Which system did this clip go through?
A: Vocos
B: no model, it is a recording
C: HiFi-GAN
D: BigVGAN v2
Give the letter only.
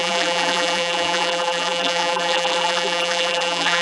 D